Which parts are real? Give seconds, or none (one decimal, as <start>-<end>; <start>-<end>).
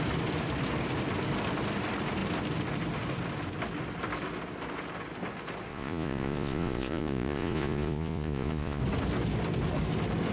0.0-5.7; 8.8-10.3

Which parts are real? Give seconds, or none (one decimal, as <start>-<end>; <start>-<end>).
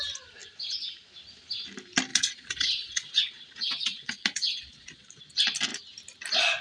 0.0-2.1; 5.2-6.6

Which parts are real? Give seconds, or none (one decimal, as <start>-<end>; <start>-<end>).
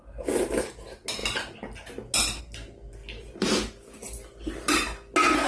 0.0-5.5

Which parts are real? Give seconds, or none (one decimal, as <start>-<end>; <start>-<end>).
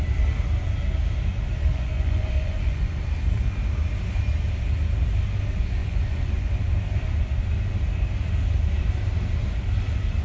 0.0-1.7; 3.0-5.8; 6.5-10.2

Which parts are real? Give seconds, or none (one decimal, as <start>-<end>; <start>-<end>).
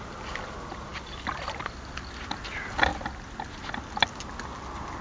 0.0-5.0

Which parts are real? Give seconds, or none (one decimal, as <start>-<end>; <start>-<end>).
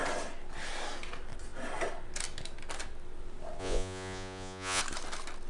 0.0-3.6; 4.8-5.5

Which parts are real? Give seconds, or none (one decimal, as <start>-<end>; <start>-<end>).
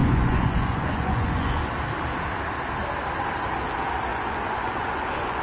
1.6-4.1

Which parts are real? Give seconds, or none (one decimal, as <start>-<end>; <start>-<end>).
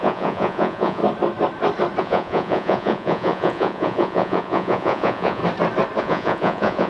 1.0-2.0; 5.4-6.0